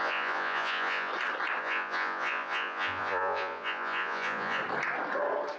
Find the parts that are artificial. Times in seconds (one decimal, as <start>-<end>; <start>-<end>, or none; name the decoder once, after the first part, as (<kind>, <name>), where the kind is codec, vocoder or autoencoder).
0.0-1.1 (vocoder, Vocos); 1.6-4.6